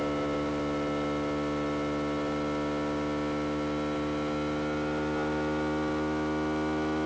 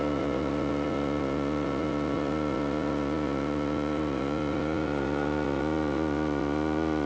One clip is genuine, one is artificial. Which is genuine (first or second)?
first